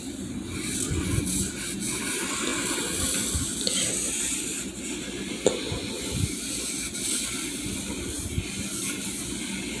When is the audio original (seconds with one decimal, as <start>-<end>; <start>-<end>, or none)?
0.0-9.8